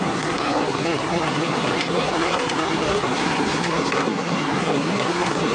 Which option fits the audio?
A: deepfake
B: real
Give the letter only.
A